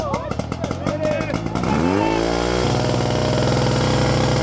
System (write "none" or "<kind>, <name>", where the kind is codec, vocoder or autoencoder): none